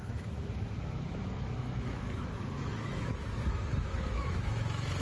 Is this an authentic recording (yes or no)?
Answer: no